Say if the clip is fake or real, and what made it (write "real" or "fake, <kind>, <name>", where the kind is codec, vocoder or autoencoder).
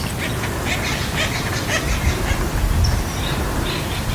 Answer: real